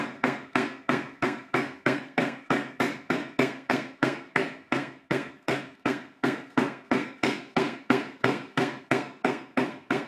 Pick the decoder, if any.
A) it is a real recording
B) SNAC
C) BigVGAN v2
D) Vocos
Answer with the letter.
B